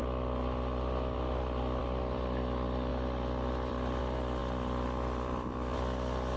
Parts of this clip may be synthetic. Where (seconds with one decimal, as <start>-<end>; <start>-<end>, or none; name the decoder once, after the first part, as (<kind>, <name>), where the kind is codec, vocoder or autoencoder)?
2.9-4.0 (vocoder, BigVGAN v2); 4.4-6.4